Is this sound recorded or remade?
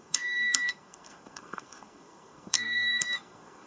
remade